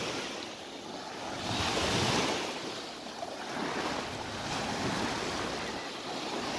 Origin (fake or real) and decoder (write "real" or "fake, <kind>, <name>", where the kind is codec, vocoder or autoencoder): real